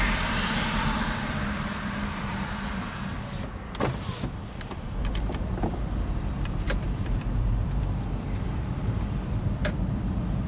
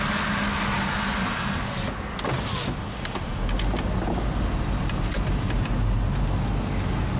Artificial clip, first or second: first